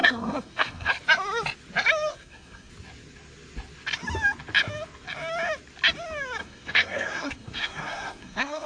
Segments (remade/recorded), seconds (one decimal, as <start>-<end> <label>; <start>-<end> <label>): 0.0-0.9 remade; 0.9-2.1 recorded; 2.1-2.7 remade; 2.7-6.4 recorded; 6.4-8.7 remade